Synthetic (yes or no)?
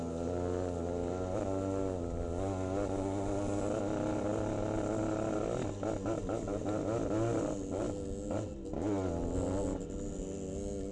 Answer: no